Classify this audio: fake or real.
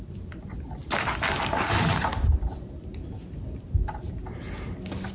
real